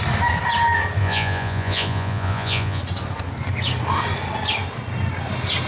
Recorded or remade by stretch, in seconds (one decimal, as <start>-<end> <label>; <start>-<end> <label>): 0.0-1.0 recorded; 1.0-2.8 remade; 2.8-5.7 recorded